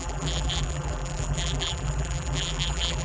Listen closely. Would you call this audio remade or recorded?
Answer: remade